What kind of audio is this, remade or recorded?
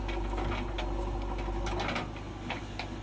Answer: recorded